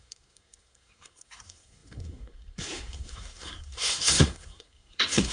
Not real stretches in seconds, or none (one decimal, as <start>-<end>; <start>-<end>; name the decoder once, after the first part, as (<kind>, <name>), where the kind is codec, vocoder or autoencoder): 0.0-5.3 (codec, SNAC)